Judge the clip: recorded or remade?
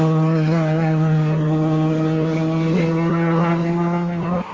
remade